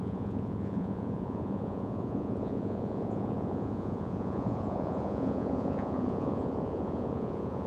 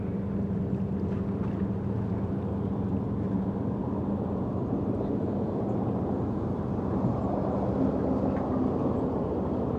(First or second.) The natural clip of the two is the second